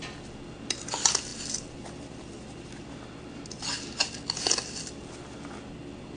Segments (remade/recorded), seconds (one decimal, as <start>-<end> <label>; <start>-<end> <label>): 0.0-6.2 recorded